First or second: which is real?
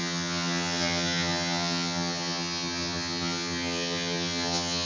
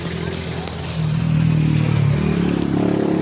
second